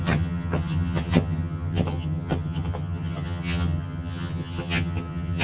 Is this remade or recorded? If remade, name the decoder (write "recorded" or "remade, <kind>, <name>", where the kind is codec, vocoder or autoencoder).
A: remade, vocoder, HiFi-GAN